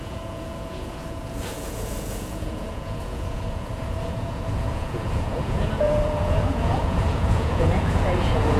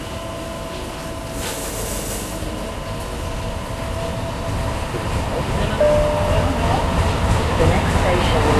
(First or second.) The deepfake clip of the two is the first